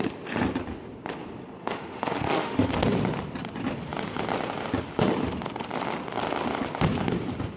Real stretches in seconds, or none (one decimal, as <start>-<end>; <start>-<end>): 0.0-1.6; 2.7-7.6